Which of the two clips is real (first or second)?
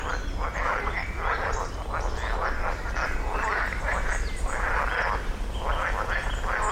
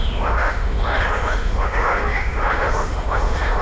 first